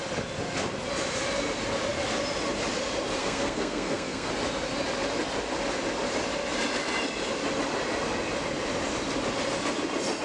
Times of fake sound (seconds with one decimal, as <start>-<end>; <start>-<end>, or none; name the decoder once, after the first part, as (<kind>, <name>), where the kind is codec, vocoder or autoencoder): 3.2-4.3 (codec, SNAC)